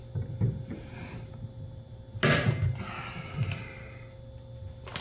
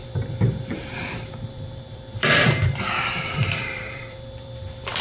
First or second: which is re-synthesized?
second